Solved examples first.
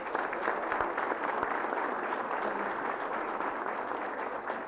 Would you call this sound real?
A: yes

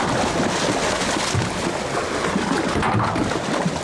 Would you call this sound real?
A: yes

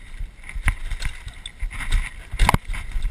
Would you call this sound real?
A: yes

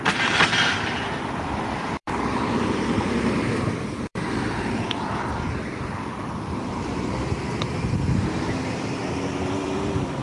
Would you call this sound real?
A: no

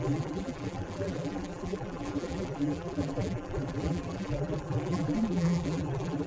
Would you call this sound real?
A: no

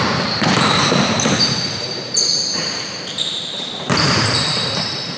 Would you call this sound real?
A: no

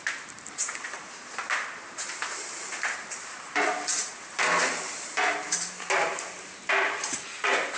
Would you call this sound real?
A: no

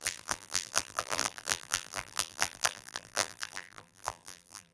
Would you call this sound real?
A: no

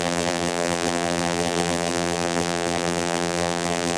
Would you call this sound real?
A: no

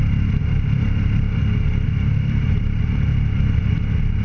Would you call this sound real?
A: no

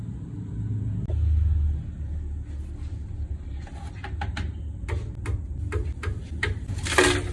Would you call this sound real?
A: yes